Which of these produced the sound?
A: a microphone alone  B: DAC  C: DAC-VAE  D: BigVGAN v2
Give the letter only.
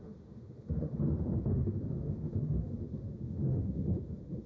C